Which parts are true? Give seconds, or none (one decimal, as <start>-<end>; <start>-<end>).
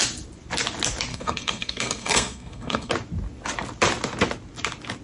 0.0-1.1; 2.9-5.0